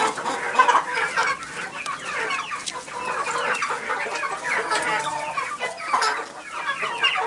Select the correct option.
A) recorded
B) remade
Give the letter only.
A